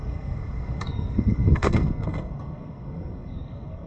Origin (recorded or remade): remade